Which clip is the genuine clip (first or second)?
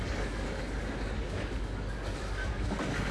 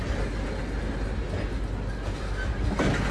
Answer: second